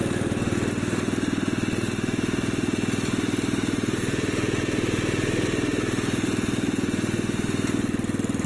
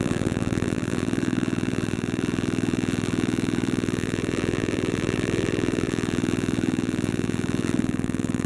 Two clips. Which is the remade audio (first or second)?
second